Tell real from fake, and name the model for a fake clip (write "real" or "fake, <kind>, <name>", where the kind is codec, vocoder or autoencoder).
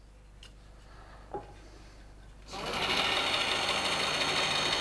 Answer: real